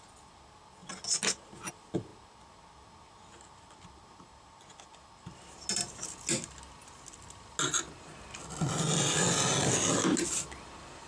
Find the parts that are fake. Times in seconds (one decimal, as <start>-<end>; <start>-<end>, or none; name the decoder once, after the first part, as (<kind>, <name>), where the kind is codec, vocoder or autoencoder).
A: none